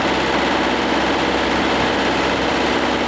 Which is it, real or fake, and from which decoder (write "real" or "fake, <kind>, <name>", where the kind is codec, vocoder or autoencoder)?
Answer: real